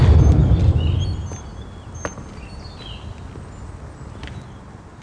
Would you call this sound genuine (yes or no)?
yes